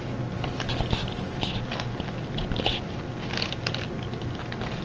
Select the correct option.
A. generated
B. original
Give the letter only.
B